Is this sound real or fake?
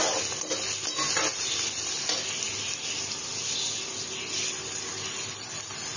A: real